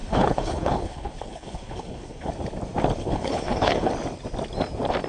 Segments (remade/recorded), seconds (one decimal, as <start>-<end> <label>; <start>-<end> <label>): 0.0-2.3 remade; 2.3-3.0 recorded; 3.0-3.9 remade; 3.9-5.1 recorded